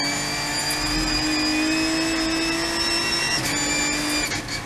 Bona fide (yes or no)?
yes